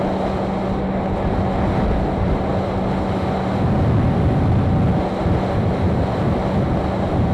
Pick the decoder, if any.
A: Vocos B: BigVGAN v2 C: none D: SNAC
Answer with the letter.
C